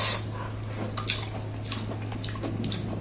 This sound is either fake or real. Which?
real